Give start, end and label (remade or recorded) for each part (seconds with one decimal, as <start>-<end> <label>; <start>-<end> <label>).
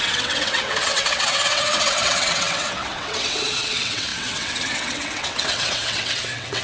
0.0-6.6 remade